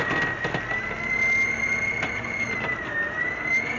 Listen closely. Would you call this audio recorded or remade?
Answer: recorded